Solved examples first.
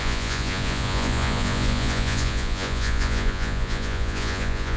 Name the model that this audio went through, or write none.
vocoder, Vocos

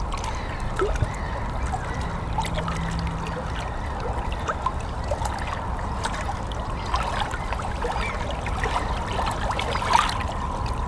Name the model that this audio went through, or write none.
none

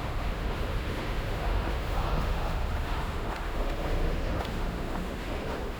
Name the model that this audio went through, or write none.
autoencoder, DAC-VAE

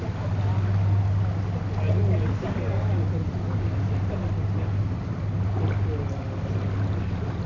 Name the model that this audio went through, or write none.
none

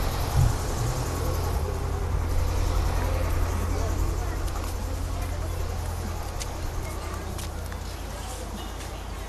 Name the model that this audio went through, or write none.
none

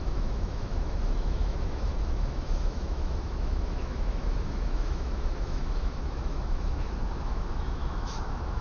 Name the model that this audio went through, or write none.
autoencoder, DAC-VAE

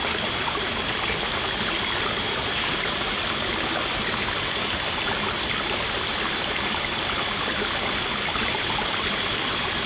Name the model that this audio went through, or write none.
none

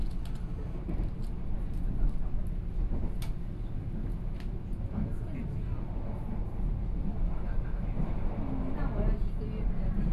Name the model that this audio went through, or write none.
none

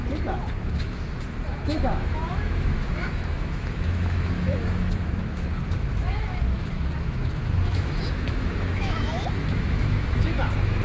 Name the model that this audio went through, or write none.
autoencoder, DAC-VAE